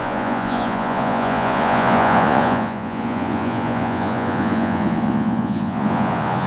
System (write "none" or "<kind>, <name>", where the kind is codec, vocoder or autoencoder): vocoder, Vocos